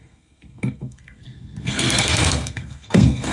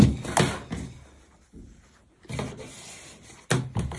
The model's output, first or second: first